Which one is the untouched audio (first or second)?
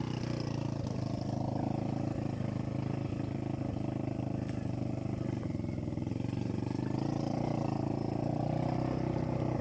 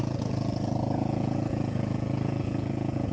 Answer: first